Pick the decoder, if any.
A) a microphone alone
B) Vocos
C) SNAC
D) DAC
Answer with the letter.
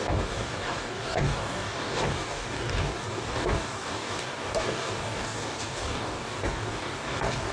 D